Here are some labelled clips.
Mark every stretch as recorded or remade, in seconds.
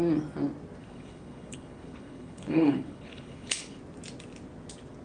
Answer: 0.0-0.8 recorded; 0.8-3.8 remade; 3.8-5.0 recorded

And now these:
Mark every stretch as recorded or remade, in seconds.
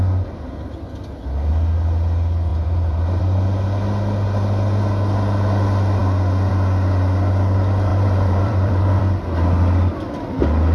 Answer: 0.0-2.5 recorded; 2.5-3.2 remade; 3.2-7.9 recorded; 7.9-9.0 remade; 9.0-10.7 recorded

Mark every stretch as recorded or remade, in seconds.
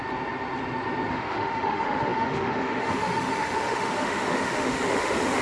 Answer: 0.0-1.1 recorded; 1.1-5.4 remade